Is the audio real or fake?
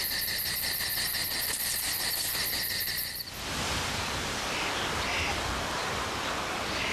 real